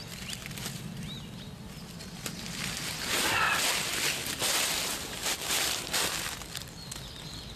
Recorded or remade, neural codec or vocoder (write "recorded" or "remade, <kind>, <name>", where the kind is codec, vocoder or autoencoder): recorded